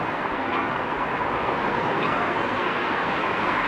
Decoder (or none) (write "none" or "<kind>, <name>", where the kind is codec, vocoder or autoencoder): codec, SNAC